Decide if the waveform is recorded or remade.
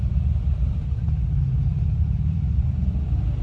remade